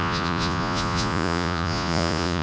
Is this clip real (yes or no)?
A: no